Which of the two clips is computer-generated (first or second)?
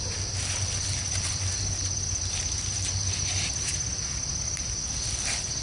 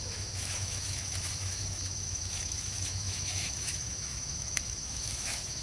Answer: second